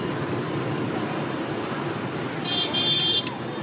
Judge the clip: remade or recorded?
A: recorded